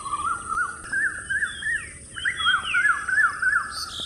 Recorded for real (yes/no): yes